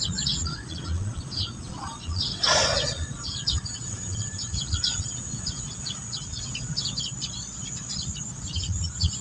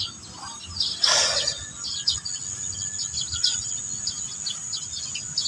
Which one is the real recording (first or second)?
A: second